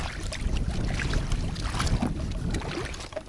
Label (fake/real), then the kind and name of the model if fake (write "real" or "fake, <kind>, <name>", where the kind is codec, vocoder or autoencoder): real